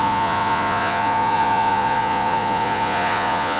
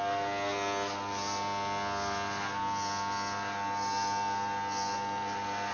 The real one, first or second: second